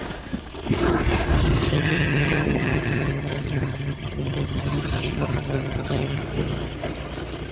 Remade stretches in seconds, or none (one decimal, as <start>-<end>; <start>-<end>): 1.7-6.2